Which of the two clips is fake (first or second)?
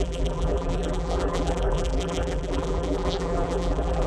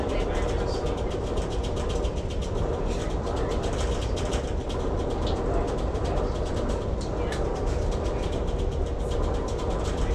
first